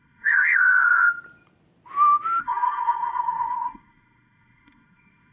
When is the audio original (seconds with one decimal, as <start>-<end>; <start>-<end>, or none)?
1.1-2.4